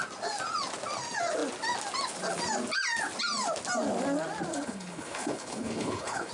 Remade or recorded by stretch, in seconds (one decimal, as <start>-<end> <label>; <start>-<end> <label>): 0.0-4.5 recorded; 4.5-6.3 remade